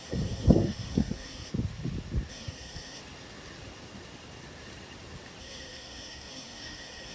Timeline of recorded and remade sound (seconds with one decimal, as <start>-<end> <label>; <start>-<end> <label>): 0.0-1.5 remade; 1.5-2.3 recorded; 2.3-3.0 remade; 3.0-5.4 recorded; 5.4-7.1 remade